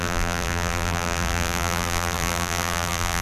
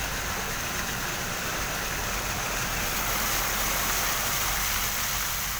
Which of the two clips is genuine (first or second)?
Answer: second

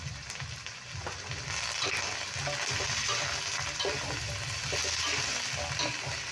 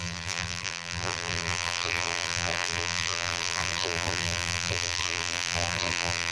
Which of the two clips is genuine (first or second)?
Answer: first